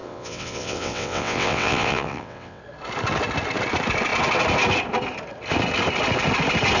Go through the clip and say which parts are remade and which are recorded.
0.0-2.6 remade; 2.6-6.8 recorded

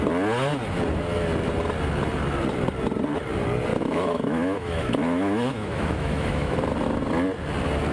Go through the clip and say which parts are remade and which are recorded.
0.0-3.7 recorded; 3.7-6.6 remade; 6.6-7.9 recorded

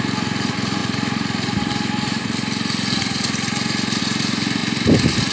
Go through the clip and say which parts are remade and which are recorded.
0.0-5.3 recorded